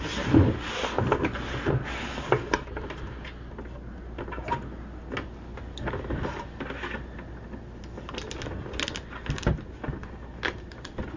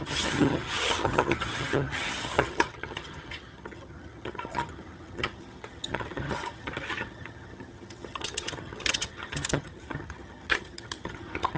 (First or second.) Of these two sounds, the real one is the first